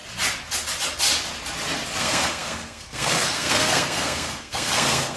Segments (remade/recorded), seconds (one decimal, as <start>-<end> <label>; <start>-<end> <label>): 0.0-2.0 recorded; 2.0-5.2 remade